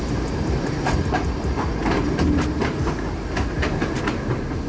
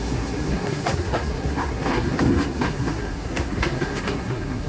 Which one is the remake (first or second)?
second